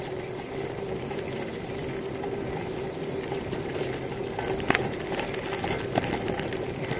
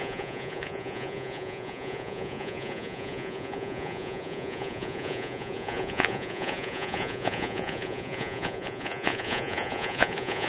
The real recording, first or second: first